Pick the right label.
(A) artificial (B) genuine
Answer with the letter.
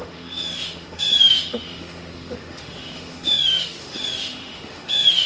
A